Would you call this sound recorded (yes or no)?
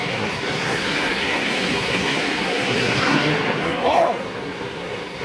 no